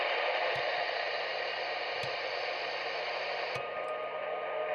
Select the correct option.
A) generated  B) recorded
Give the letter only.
B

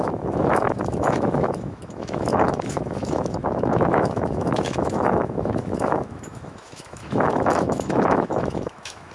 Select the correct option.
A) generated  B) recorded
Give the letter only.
A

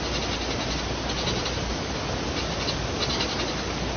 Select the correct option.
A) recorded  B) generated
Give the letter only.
A